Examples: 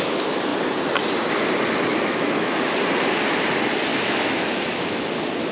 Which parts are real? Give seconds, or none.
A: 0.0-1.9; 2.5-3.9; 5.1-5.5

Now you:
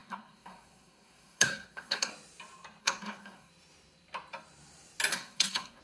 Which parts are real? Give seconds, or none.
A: 2.1-2.8; 3.5-5.1

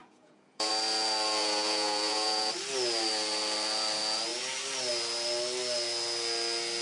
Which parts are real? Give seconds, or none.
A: 0.7-1.4; 2.5-6.8